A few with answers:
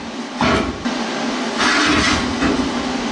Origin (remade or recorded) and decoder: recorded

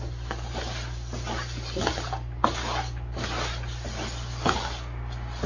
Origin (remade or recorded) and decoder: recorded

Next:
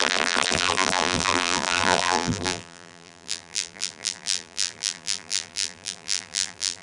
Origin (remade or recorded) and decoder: remade, vocoder, BigVGAN v2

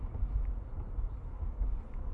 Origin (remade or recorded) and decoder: recorded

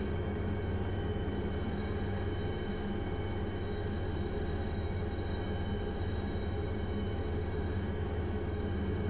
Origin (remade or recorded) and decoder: remade, autoencoder, DAC-VAE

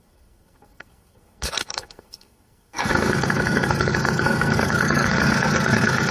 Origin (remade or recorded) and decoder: remade, codec, SNAC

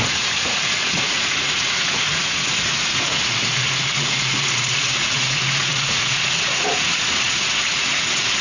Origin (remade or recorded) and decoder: remade, vocoder, Vocos